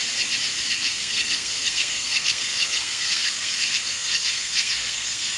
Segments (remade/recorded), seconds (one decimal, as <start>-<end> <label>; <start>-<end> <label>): 0.0-0.7 recorded; 0.7-5.4 remade